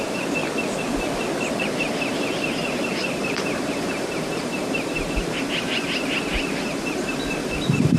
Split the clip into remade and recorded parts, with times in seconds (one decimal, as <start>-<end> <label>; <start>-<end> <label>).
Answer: 0.0-0.4 remade; 0.4-1.5 recorded; 1.5-8.0 remade